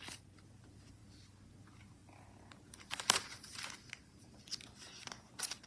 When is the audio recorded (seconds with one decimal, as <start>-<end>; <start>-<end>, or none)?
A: 1.0-1.6